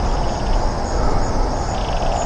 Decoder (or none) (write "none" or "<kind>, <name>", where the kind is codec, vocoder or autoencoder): none